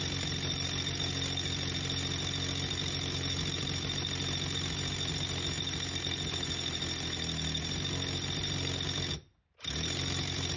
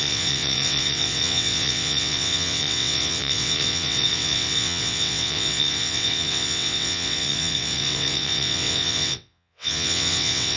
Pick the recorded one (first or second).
first